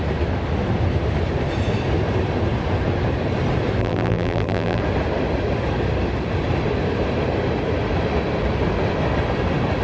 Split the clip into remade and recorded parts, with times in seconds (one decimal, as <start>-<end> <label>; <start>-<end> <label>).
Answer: 0.0-3.8 recorded; 3.8-4.8 remade; 4.8-9.8 recorded